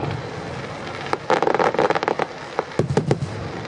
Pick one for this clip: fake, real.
real